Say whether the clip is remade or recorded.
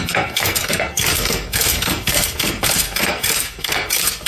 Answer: remade